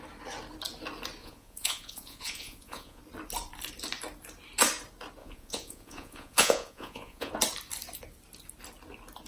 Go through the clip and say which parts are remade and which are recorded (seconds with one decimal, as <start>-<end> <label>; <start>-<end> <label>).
0.0-1.2 recorded; 1.2-3.0 remade; 3.0-5.2 recorded; 5.2-7.3 remade; 7.3-9.3 recorded